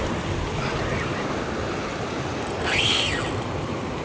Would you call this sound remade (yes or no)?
no